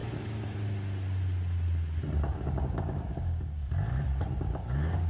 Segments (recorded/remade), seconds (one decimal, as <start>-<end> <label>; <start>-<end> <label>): 0.0-2.3 recorded; 2.3-3.6 remade; 3.6-4.4 recorded; 4.4-5.1 remade